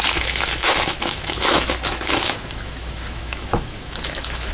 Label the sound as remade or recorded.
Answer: remade